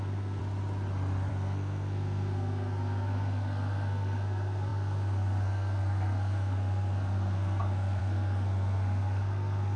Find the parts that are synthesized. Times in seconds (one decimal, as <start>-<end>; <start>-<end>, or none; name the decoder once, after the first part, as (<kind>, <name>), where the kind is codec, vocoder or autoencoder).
0.0-0.4 (codec, SNAC); 1.3-9.8